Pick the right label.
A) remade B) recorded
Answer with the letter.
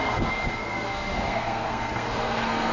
A